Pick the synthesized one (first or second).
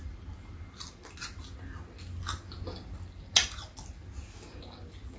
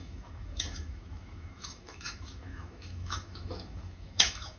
second